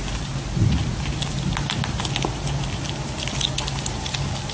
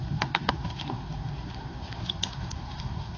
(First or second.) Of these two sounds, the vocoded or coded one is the second